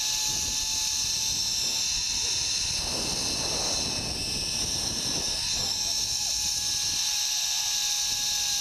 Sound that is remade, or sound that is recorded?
recorded